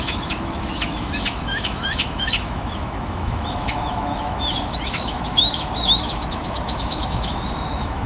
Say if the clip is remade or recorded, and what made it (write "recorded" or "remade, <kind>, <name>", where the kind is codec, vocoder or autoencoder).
remade, autoencoder, DAC-VAE